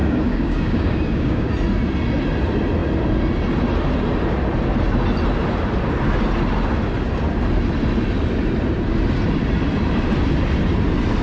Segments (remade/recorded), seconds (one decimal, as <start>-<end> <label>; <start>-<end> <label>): 0.0-1.5 remade; 1.5-11.2 recorded